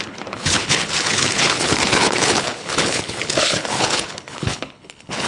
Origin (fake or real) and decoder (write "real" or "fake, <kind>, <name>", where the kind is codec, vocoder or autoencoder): fake, codec, HILCodec